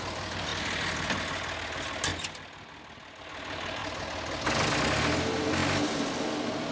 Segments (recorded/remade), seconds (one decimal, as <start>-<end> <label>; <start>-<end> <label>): 0.0-6.7 recorded